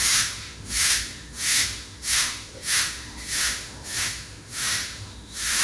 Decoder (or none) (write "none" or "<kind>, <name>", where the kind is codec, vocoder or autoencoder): autoencoder, DAC-VAE